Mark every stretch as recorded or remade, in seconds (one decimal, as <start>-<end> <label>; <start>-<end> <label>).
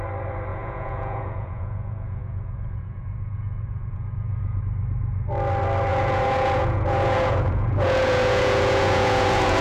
0.0-0.5 recorded; 0.5-4.6 remade; 4.6-5.9 recorded; 5.9-9.6 remade